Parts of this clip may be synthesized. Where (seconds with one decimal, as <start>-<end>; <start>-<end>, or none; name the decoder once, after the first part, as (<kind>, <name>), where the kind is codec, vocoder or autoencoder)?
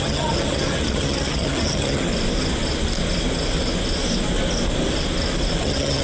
0.0-2.1 (vocoder, HiFi-GAN); 5.6-6.0